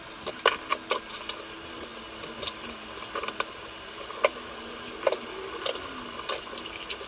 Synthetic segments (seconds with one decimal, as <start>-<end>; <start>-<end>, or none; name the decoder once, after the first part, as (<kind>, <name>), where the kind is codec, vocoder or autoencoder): none